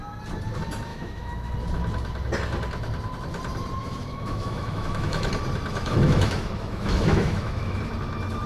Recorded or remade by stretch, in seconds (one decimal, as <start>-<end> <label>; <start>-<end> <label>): 0.0-0.9 recorded; 0.9-1.5 remade; 1.5-3.8 recorded; 3.8-5.3 remade; 5.3-5.7 recorded; 5.7-7.8 remade; 7.8-8.5 recorded